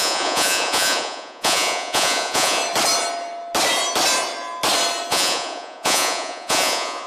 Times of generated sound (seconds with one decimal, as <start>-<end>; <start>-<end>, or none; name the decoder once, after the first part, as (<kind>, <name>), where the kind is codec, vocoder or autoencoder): 0.0-2.6 (vocoder, Vocos); 5.1-7.1